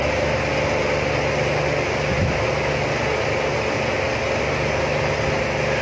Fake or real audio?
real